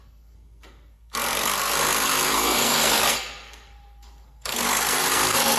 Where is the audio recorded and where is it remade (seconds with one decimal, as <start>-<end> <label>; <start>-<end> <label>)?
0.0-5.6 remade

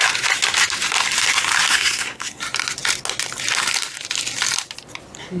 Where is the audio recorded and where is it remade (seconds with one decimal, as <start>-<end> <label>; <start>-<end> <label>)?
0.0-1.7 recorded; 1.7-2.4 remade; 2.4-5.4 recorded

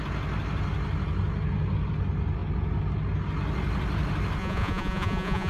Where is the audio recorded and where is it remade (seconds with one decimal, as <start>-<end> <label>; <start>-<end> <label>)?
0.0-4.4 recorded; 4.4-5.5 remade